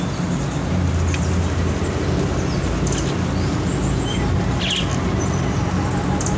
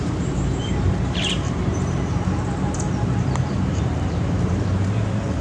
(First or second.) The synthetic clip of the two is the second